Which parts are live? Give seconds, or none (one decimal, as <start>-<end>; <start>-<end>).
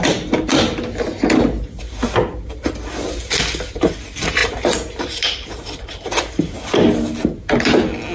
0.0-8.1